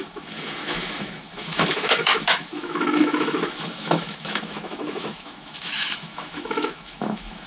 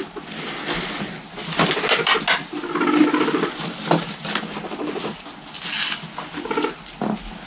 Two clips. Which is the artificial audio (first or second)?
first